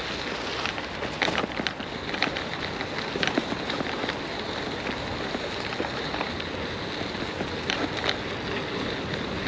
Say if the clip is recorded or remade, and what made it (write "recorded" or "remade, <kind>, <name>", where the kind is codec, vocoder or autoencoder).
recorded